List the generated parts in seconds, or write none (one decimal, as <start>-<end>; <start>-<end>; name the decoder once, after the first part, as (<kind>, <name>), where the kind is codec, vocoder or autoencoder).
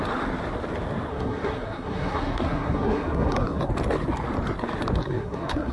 1.1-3.7 (codec, SNAC); 5.0-5.7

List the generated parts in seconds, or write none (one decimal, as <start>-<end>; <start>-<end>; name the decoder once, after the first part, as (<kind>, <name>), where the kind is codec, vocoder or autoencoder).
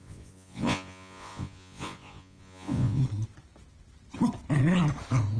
0.0-3.0 (vocoder, Vocos)